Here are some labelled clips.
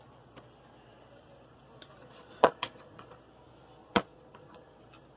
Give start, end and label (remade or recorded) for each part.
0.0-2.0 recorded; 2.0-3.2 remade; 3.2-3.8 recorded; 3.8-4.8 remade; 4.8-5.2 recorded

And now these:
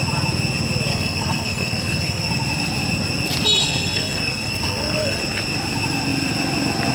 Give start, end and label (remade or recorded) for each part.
0.0-0.9 recorded; 0.9-2.3 remade; 2.3-3.6 recorded; 3.6-5.2 remade; 5.2-6.9 recorded

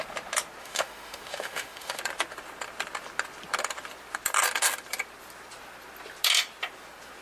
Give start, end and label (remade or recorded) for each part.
0.0-0.6 recorded; 0.6-2.0 remade; 2.0-7.2 recorded

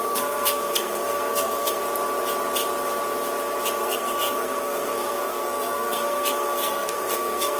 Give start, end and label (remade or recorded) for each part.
0.0-1.8 remade; 1.8-3.8 recorded; 3.8-7.6 remade

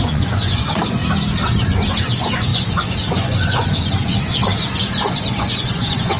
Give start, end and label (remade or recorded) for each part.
0.0-1.0 remade; 1.0-1.6 recorded; 1.6-6.2 remade

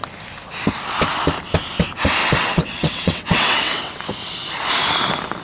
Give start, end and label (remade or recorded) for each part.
0.0-2.2 recorded; 2.2-4.1 remade; 4.1-5.4 recorded